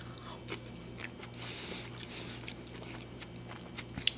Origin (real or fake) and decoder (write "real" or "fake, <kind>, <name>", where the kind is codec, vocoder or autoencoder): real